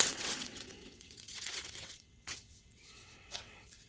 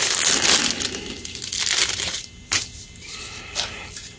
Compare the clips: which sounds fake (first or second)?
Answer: first